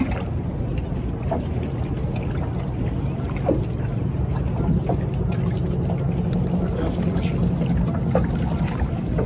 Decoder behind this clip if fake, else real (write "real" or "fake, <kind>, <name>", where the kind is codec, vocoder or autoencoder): real